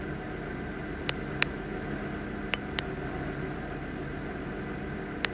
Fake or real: real